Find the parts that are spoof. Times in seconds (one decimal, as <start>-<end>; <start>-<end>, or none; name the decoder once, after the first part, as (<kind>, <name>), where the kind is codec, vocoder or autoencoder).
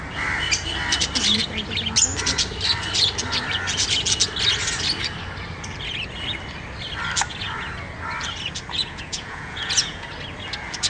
8.8-10.1 (vocoder, Vocos)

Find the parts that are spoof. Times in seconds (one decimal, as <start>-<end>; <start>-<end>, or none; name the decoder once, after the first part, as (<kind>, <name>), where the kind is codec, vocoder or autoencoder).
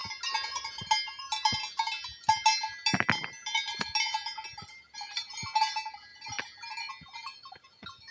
none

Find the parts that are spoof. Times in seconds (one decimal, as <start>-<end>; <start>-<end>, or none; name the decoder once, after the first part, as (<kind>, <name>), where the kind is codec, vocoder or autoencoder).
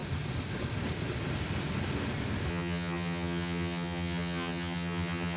2.5-5.4 (vocoder, HiFi-GAN)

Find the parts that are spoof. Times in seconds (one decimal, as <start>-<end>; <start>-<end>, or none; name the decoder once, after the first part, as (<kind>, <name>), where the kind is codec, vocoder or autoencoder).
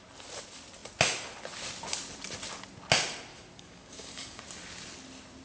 3.3-4.4 (codec, DAC)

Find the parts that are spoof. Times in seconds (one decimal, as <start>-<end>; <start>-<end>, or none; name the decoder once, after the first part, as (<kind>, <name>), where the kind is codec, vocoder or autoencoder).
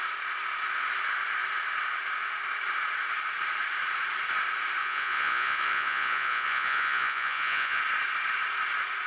4.8-7.8 (vocoder, Vocos)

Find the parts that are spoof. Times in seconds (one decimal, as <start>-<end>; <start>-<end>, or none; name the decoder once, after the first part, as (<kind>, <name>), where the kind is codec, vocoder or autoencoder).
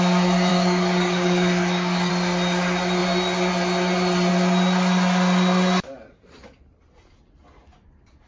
0.5-2.1 (codec, DAC)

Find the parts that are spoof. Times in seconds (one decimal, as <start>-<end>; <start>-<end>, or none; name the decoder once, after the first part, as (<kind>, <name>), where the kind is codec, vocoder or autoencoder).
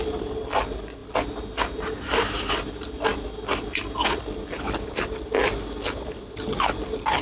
none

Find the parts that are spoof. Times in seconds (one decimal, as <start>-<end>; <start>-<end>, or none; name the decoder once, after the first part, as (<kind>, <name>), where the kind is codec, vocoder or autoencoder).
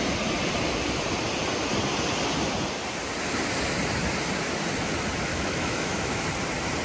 5.3-6.2 (autoencoder, DAC-VAE)